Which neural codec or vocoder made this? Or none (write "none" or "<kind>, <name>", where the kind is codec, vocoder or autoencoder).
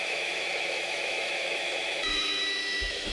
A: autoencoder, DAC-VAE